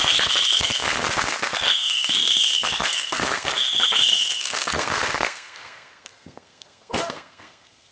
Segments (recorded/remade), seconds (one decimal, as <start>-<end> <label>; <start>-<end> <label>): 0.0-7.9 remade

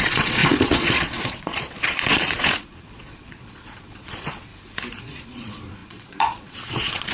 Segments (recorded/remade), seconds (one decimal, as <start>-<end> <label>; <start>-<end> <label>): 0.0-4.5 remade; 4.5-5.0 recorded; 5.0-7.1 remade